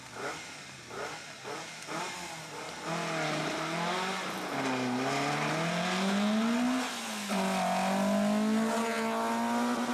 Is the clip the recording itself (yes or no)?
yes